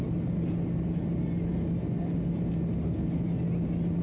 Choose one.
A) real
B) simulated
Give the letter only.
A